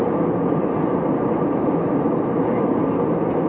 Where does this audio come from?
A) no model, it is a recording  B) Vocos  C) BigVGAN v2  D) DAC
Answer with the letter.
A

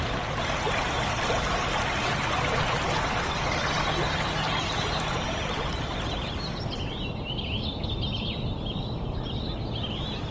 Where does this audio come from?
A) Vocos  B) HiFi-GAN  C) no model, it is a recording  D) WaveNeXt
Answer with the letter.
C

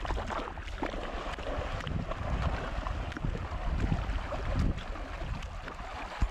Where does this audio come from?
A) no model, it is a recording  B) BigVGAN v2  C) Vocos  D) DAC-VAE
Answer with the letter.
A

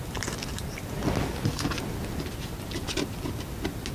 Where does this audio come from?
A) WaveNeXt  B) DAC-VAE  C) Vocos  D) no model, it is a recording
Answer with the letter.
D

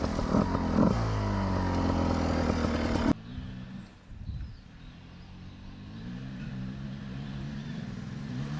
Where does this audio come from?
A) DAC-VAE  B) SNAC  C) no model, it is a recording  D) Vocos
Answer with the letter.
C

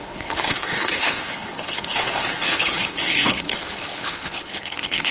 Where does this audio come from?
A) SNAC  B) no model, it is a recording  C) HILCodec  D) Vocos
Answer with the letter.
C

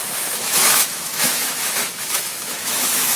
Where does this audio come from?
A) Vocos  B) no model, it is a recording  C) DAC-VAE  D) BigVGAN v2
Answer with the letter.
C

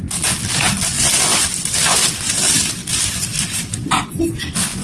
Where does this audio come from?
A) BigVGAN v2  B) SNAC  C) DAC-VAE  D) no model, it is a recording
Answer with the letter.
A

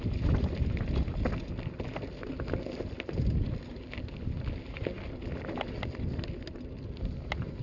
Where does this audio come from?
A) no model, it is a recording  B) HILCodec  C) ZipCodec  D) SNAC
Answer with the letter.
A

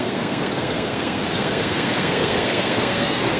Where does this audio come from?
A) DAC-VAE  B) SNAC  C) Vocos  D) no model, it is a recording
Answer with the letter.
B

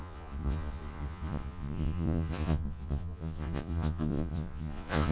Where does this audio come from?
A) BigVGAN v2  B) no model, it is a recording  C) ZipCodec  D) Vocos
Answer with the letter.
D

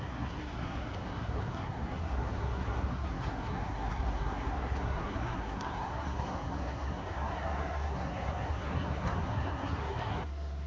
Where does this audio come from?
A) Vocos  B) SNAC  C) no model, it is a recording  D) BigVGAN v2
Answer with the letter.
B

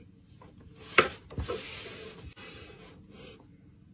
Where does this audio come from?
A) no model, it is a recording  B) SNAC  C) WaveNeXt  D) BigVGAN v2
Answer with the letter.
A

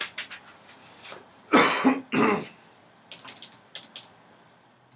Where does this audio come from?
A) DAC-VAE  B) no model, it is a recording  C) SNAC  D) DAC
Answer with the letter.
B